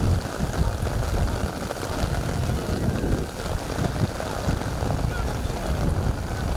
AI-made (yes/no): no